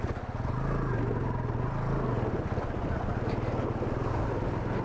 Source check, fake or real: real